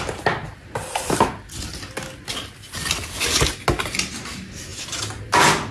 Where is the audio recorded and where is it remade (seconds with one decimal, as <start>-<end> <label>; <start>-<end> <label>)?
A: 0.0-5.7 recorded